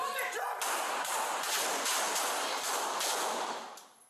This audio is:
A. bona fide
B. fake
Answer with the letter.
A